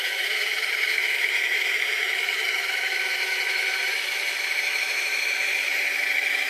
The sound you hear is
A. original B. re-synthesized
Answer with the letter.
B